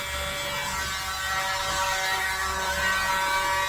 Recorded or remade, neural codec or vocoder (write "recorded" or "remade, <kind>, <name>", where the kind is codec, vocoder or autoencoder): recorded